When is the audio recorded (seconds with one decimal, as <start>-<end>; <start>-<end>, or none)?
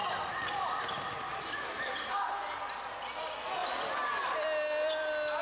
0.0-5.4